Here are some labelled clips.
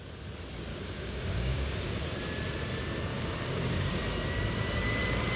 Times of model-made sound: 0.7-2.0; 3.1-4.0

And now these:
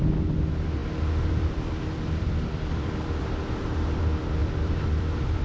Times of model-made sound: 0.8-4.0; 4.4-5.4

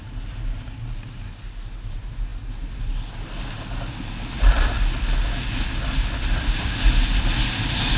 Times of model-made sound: none

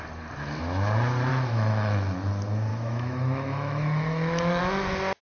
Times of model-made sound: 1.3-1.9; 2.7-4.6

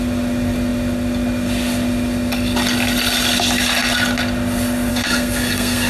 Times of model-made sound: 4.9-5.9

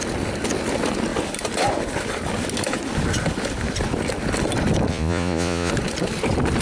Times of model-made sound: 4.9-5.7